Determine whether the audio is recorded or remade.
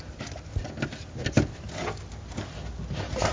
recorded